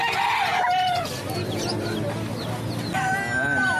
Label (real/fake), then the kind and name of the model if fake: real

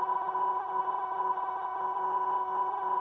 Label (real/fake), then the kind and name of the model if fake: fake, codec, SNAC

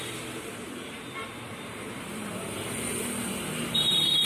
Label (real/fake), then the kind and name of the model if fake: fake, vocoder, BigVGAN v2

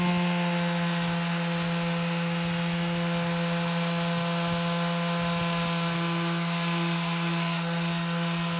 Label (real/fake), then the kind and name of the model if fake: real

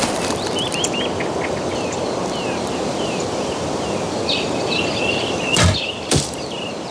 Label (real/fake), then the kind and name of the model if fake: fake, vocoder, BigVGAN v2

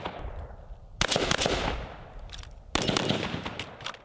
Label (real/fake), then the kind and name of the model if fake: real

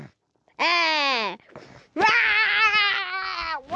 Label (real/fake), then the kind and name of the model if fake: real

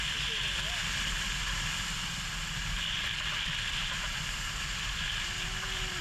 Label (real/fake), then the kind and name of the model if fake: fake, vocoder, BigVGAN v2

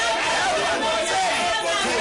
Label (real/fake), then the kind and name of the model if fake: real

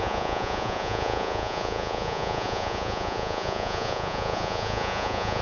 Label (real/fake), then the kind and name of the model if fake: fake, vocoder, Vocos